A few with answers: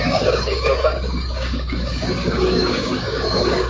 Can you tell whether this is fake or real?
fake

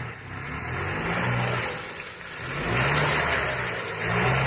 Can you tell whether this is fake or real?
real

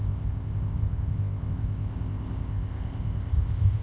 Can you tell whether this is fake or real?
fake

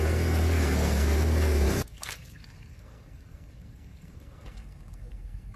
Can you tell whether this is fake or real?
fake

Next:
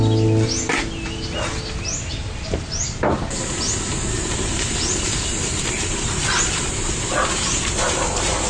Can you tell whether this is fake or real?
real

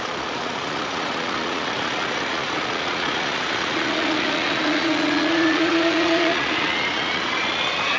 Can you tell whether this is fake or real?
fake